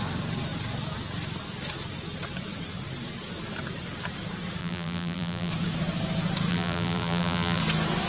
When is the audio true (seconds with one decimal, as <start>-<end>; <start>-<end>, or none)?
0.0-4.6; 5.5-6.5; 7.6-8.1